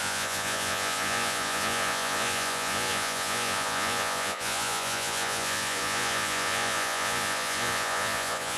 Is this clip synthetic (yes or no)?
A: yes